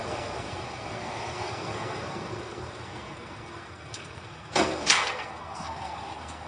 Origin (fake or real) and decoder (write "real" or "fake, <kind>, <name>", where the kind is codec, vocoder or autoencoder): fake, codec, SNAC